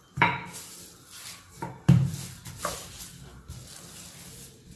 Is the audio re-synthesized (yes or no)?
no